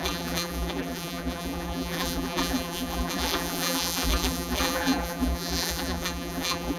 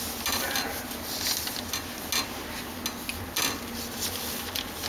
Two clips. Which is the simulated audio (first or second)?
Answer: first